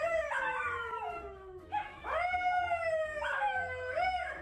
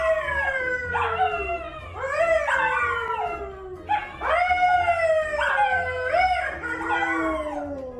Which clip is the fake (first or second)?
first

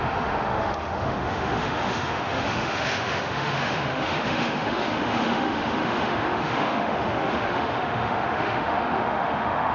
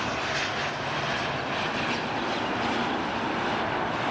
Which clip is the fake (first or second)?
first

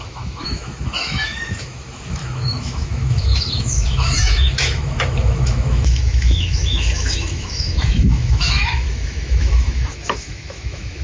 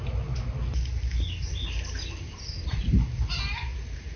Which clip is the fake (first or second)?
first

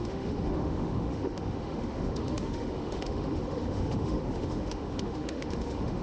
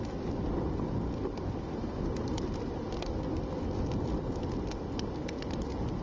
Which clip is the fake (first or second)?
first